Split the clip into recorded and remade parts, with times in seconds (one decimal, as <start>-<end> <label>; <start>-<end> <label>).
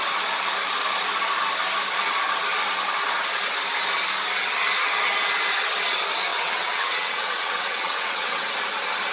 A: 0.0-6.3 recorded; 6.3-8.5 remade; 8.5-9.1 recorded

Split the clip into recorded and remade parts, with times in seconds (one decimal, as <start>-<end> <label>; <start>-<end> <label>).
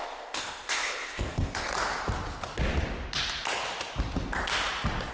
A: 0.0-1.7 remade; 1.7-5.1 recorded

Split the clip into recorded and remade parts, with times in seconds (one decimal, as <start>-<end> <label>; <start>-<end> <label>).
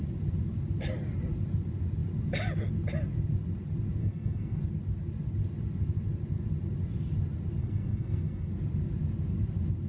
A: 0.0-4.0 recorded; 4.0-4.6 remade; 4.6-7.6 recorded; 7.6-8.5 remade; 8.5-9.9 recorded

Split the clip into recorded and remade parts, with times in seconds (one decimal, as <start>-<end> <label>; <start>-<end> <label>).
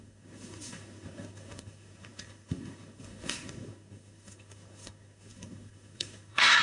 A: 0.0-6.6 remade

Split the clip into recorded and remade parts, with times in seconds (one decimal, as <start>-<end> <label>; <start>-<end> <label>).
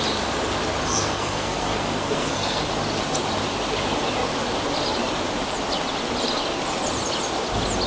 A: 0.0-0.9 recorded; 0.9-2.6 remade; 2.6-7.9 recorded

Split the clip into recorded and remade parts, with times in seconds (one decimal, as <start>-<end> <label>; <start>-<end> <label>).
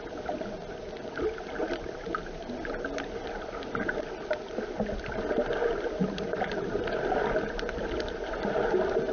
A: 0.0-9.1 recorded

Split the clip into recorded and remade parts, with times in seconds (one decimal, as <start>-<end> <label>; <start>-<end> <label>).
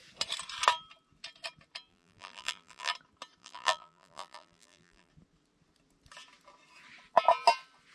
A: 0.0-1.9 recorded; 1.9-2.9 remade; 2.9-3.4 recorded; 3.4-5.1 remade; 5.1-7.9 recorded